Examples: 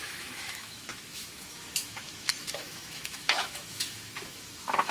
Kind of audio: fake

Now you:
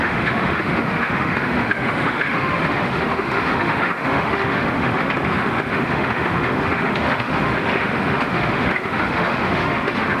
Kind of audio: fake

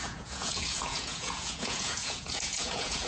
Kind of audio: fake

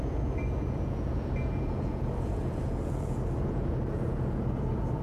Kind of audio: fake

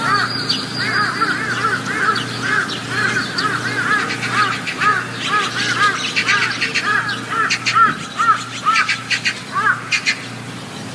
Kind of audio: real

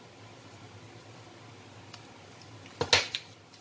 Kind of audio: real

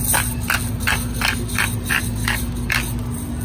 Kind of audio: real